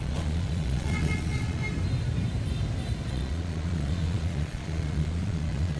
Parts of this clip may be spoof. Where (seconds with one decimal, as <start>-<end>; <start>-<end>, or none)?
0.0-1.6; 3.1-5.8